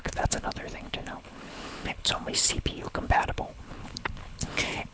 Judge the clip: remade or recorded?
remade